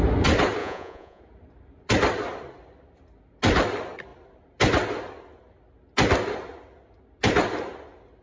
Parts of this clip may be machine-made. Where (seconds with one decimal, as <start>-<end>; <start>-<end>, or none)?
0.6-1.2